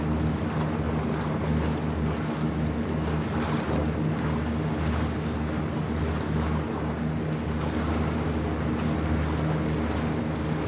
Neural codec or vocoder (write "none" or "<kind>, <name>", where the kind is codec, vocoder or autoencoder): none